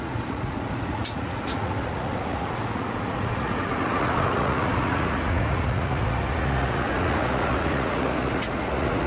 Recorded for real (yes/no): no